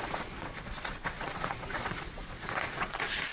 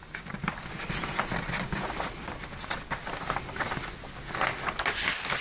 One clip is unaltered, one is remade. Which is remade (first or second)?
first